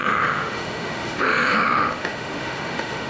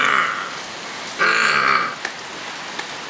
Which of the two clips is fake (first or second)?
first